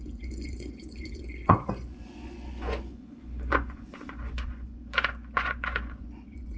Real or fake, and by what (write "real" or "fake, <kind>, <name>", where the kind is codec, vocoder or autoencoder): fake, vocoder, Vocos